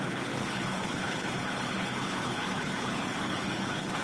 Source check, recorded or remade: remade